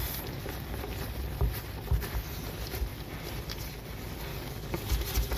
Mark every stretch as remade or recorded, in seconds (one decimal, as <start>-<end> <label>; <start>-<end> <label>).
0.0-4.3 recorded; 4.3-4.9 remade; 4.9-5.4 recorded